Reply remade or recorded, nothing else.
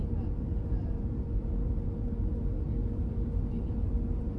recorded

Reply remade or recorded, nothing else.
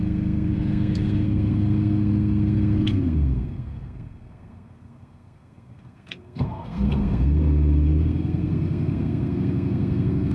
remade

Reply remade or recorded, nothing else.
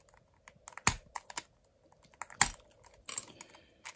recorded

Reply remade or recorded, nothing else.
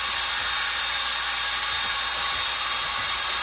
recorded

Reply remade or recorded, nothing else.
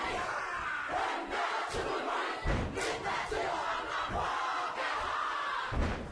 recorded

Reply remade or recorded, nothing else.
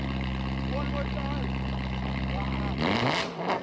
recorded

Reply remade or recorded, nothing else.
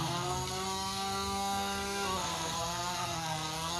remade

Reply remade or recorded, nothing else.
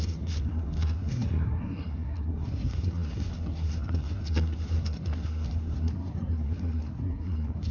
remade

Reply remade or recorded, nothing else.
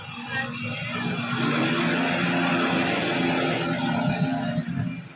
recorded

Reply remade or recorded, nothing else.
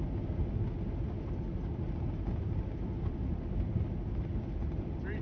recorded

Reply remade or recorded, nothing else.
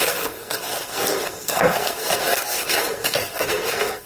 remade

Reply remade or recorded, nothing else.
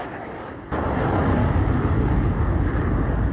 recorded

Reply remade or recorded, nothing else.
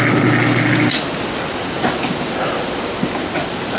recorded